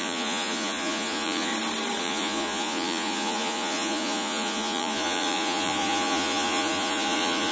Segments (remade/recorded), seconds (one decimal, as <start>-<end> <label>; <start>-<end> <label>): 0.0-1.5 remade; 1.5-2.0 recorded; 2.0-7.5 remade